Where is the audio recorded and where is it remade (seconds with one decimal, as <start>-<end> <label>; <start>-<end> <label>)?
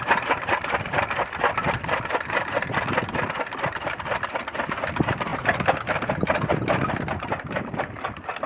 0.0-5.3 remade; 5.3-6.1 recorded; 6.1-8.5 remade